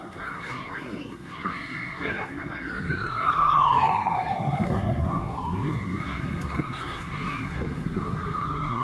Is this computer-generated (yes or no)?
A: yes